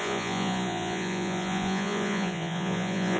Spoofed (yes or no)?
yes